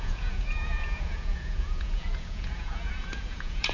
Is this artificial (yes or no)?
yes